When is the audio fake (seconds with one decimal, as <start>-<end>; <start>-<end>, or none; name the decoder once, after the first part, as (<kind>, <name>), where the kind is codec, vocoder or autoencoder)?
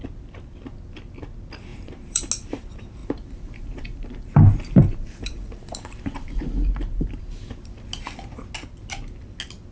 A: 1.7-2.3 (vocoder, BigVGAN v2); 3.0-7.2